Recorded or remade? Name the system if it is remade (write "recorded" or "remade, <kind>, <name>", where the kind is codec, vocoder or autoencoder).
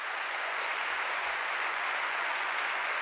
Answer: remade, vocoder, Vocos